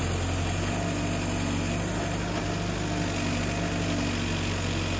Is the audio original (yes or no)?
yes